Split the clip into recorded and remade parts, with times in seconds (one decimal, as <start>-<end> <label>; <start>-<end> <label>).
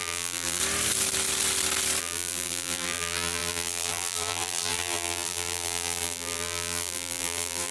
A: 0.0-0.6 remade; 0.6-2.0 recorded; 2.0-7.7 remade